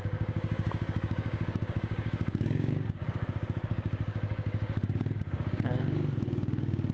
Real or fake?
fake